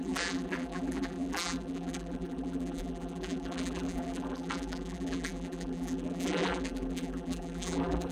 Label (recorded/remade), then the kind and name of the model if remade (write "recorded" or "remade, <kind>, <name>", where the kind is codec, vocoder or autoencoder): remade, vocoder, BigVGAN v2